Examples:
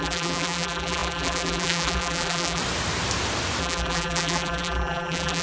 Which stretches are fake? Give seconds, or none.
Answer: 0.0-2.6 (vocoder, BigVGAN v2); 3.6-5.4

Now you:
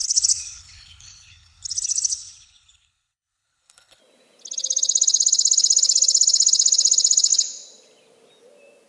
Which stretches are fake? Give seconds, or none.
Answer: 0.0-4.0 (codec, HILCodec)

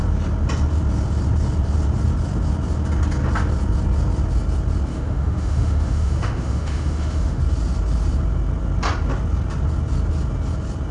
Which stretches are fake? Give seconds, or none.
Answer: 4.9-7.4 (autoencoder, DAC-VAE)

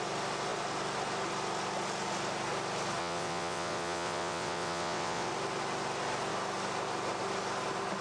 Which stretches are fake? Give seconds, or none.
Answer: 3.0-5.3 (vocoder, WaveNeXt)